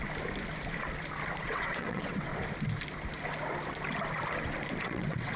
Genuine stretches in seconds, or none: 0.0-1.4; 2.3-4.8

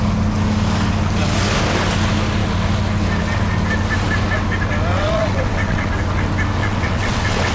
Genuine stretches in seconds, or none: 0.0-4.9; 5.9-6.6

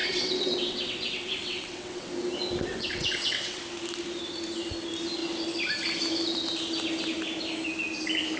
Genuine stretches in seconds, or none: 2.1-2.7; 3.6-8.4

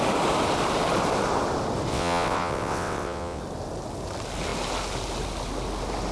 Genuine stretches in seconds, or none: 0.0-1.9; 3.4-6.1

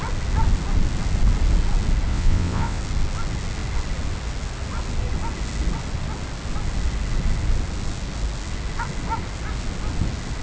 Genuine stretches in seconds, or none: 0.0-2.1; 2.8-10.4

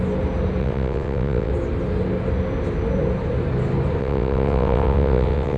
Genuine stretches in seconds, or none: 0.0-0.6; 1.5-4.0

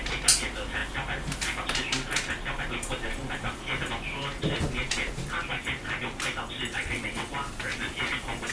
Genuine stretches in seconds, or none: 0.0-6.7; 7.3-8.5